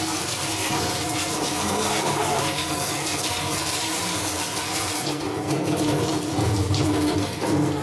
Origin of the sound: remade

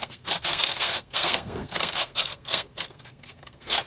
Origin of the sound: remade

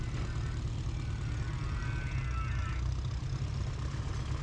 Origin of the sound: recorded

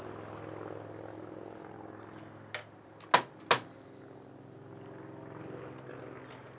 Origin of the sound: recorded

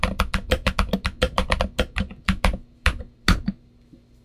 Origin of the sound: recorded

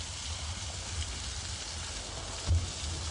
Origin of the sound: recorded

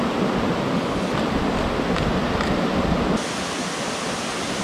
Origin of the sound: recorded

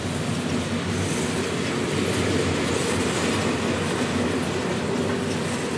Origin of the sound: recorded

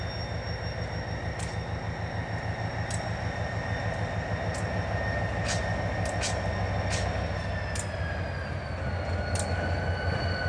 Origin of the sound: recorded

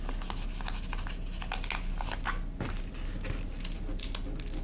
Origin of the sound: recorded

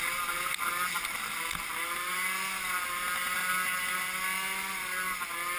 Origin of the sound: recorded